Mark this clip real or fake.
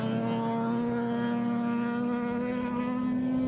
real